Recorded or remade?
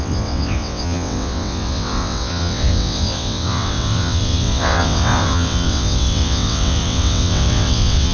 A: remade